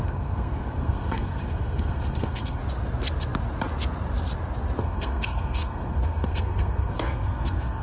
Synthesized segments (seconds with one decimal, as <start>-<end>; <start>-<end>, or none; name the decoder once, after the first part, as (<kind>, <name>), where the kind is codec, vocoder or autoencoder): 0.0-2.6 (codec, SNAC); 4.8-7.8